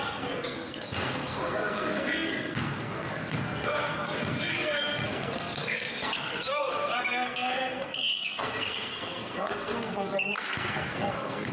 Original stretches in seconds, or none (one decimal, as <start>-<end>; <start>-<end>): none